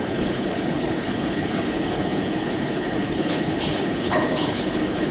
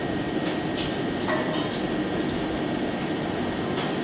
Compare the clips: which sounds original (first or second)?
second